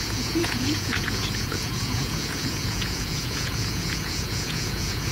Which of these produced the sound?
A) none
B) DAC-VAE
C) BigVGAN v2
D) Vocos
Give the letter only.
D